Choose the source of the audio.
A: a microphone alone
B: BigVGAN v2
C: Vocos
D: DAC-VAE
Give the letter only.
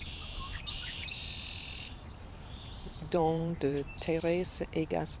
B